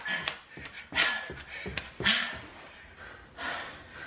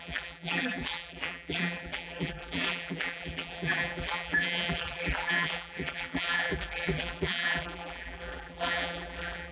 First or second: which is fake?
second